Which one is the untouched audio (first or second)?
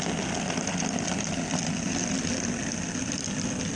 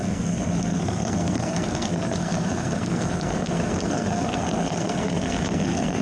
first